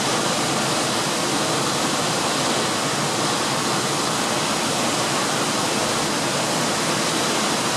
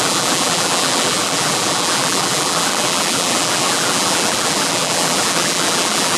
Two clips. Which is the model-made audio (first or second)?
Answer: second